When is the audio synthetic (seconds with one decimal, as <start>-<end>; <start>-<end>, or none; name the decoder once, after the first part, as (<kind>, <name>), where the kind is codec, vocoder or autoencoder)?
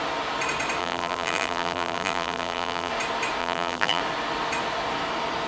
0.8-2.9 (vocoder, BigVGAN v2); 3.4-4.0